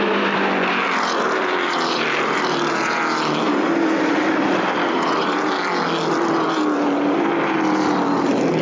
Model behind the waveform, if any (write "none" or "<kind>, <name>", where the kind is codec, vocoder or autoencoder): vocoder, BigVGAN v2